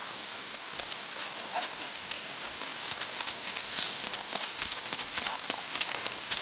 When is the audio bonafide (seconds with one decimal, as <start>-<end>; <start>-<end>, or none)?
none